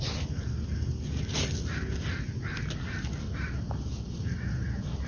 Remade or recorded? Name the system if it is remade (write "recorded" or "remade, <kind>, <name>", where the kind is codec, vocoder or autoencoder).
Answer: recorded